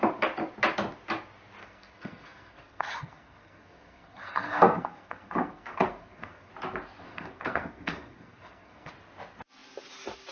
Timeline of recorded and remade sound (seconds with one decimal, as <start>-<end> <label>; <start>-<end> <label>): 0.0-1.6 recorded; 1.6-6.5 remade; 6.5-7.1 recorded; 7.1-8.9 remade; 8.9-10.3 recorded